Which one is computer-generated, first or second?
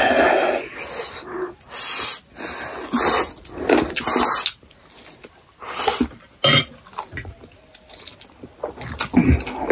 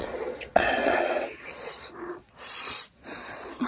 second